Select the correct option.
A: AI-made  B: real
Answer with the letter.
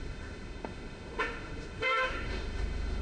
A